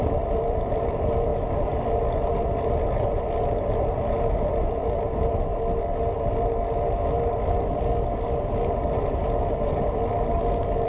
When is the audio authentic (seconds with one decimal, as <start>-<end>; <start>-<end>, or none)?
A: 5.5-8.8